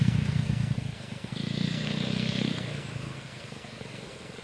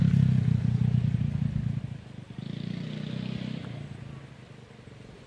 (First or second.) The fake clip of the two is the first